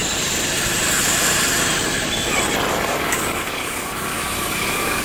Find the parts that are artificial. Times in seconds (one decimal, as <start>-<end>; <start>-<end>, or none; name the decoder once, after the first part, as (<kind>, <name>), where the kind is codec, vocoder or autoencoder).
2.7-5.0 (codec, DAC)